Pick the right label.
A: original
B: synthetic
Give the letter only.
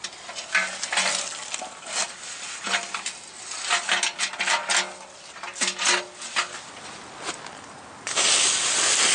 A